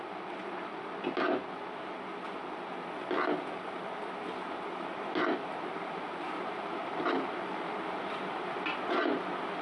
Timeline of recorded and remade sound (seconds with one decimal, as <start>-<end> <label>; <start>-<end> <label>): 0.0-5.5 recorded; 5.5-8.0 remade; 8.0-9.6 recorded